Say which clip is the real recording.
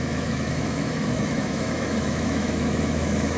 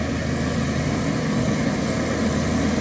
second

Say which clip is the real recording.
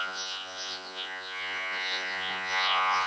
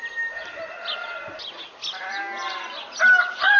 second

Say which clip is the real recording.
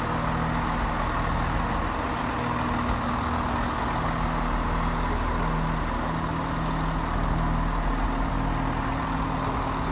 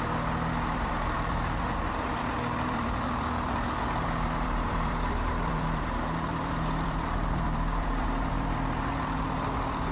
first